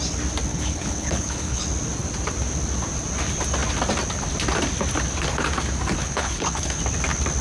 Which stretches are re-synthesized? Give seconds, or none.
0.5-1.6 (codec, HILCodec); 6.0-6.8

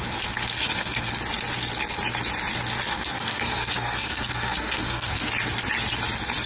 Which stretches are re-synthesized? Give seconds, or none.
0.6-1.1 (codec, SNAC); 2.9-5.3